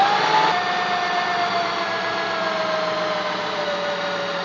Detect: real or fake real